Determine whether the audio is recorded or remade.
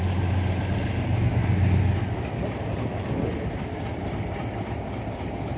recorded